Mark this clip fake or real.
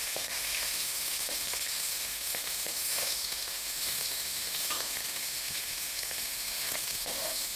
fake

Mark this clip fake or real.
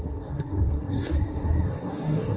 fake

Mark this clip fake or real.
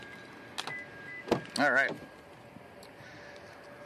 real